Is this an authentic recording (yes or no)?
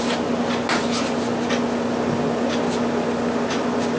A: yes